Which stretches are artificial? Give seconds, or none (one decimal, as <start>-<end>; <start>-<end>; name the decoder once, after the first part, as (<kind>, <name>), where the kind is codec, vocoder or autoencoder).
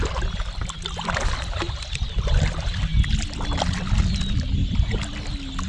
none